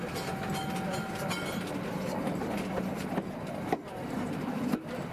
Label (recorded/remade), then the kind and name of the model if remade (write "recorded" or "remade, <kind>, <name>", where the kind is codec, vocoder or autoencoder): recorded